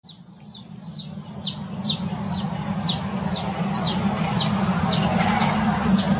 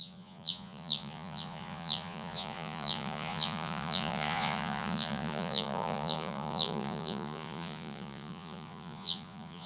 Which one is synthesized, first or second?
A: second